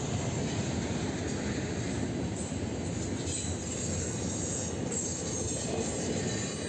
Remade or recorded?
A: recorded